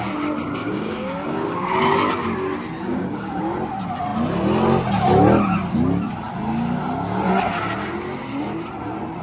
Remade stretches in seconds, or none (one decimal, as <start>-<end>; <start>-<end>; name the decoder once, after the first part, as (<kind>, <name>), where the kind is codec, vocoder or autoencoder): 0.6-2.1 (codec, DAC); 2.9-3.5